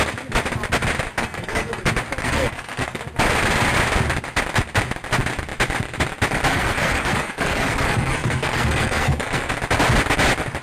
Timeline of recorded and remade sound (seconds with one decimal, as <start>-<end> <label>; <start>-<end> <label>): 0.0-1.2 recorded; 1.2-1.8 remade; 1.8-2.2 recorded; 2.2-3.0 remade; 3.0-6.5 recorded; 6.5-9.5 remade; 9.5-10.6 recorded